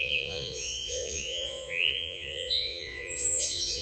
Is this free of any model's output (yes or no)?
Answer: no